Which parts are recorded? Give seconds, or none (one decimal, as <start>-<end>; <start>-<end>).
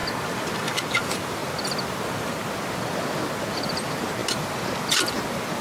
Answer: 0.0-5.6